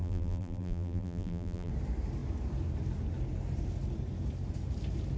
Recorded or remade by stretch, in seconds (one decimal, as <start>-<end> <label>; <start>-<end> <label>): 0.0-1.7 remade; 1.7-5.2 recorded